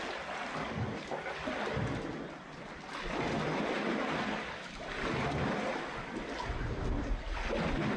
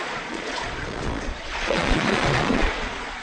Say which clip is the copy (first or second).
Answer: second